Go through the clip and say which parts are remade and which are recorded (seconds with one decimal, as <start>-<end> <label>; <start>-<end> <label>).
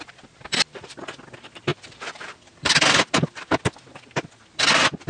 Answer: 0.0-5.1 recorded